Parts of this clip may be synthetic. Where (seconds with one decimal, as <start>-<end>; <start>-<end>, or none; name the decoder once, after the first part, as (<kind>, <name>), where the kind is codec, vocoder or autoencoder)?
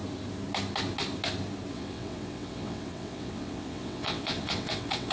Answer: 1.7-5.1 (vocoder, WaveNeXt)